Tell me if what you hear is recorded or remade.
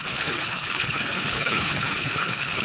remade